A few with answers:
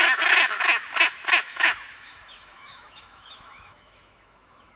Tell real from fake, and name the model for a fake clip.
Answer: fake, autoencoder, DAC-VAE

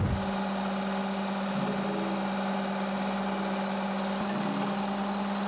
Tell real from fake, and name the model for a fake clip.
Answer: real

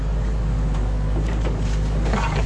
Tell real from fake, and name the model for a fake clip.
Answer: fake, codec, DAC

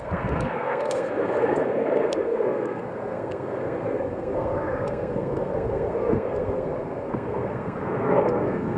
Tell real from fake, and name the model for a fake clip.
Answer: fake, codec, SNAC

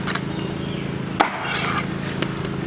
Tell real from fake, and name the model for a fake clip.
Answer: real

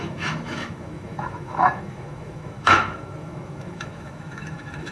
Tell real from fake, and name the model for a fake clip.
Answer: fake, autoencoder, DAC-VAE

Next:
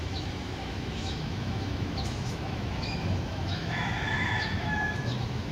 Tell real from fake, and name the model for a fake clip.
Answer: fake, autoencoder, DAC-VAE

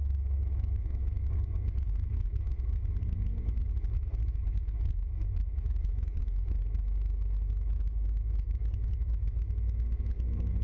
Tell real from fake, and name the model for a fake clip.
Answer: fake, autoencoder, DAC-VAE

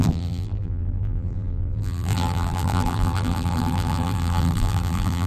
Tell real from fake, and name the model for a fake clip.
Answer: fake, vocoder, BigVGAN v2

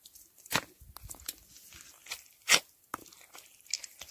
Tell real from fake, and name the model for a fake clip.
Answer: real